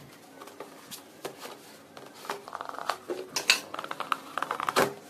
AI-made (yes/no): no